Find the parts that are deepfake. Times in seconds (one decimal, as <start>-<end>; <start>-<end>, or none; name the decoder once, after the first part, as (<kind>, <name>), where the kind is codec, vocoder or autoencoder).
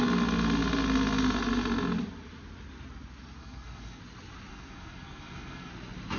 3.4-4.0 (codec, SNAC); 4.5-5.7